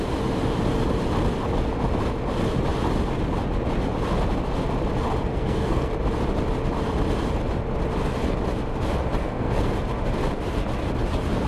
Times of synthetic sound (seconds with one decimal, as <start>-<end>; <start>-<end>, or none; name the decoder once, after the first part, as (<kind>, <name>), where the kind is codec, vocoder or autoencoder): 5.3-5.9 (codec, SNAC); 9.2-9.7